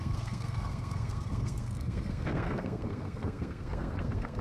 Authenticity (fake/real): fake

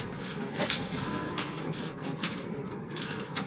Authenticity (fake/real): fake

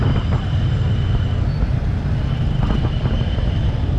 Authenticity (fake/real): real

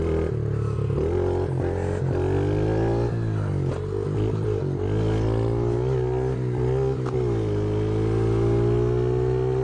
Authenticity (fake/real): real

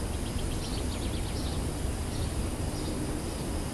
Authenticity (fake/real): real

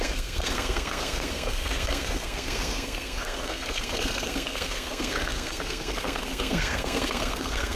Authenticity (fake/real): fake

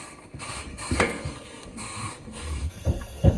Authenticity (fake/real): fake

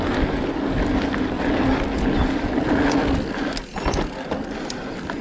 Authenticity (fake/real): real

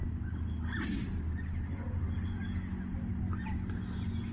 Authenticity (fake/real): real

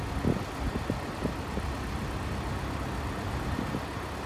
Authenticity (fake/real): real